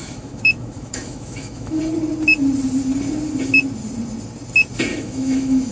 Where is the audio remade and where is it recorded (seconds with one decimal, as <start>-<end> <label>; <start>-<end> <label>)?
0.0-1.8 remade; 1.8-4.9 recorded; 4.9-5.7 remade